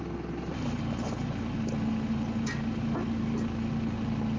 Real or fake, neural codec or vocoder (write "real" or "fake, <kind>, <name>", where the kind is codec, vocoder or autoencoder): real